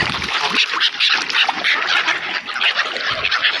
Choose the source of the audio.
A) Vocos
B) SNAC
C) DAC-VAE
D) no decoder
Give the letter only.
D